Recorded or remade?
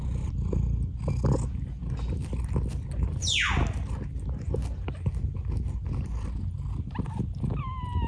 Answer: recorded